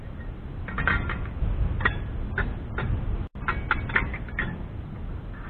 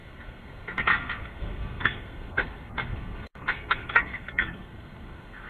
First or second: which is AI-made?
second